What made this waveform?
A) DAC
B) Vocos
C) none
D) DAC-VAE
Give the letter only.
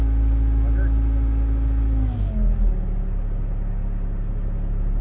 C